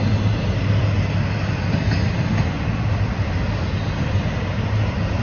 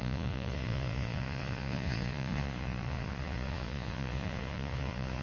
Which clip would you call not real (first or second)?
second